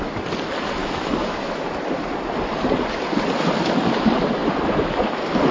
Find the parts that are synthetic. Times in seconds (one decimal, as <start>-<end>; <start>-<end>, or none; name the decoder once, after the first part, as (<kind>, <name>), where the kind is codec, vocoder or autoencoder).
0.8-1.8 (autoencoder, DAC-VAE)